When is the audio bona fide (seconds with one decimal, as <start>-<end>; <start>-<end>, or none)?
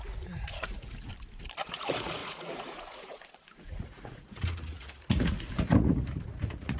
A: 1.1-1.6